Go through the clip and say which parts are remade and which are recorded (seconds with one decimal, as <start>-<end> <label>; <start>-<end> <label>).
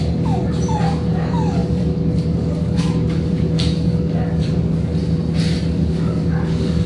0.0-0.4 remade; 0.4-1.1 recorded; 1.1-4.9 remade; 4.9-5.7 recorded; 5.7-6.9 remade